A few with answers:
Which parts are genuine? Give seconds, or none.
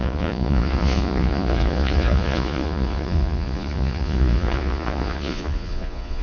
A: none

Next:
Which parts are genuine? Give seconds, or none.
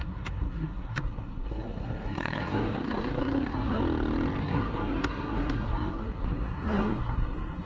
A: 3.8-4.4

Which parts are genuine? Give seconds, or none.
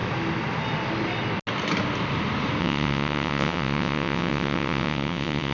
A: 0.0-2.6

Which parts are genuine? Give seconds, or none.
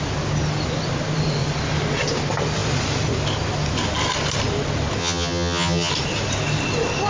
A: 0.0-5.0; 5.9-7.1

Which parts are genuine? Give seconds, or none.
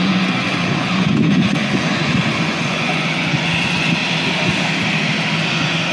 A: 4.0-5.5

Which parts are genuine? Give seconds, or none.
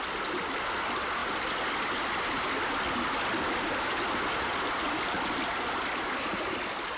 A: 0.0-7.0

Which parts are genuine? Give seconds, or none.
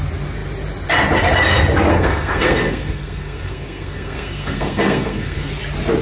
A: 0.0-1.9; 5.5-6.0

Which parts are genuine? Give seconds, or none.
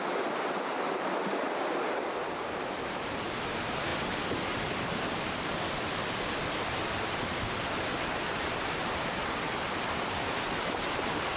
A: 0.0-11.4